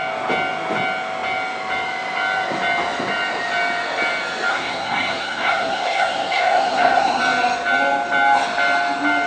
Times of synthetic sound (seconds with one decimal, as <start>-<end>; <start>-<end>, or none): 4.5-7.2